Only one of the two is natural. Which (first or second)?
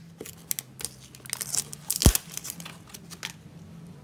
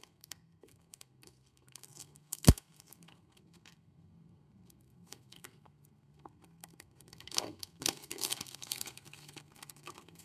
first